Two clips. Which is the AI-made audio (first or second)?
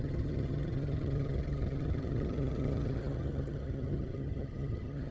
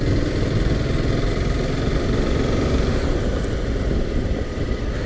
first